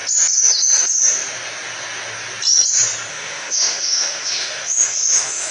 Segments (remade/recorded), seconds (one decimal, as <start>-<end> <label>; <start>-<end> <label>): 0.0-3.1 recorded; 3.1-5.5 remade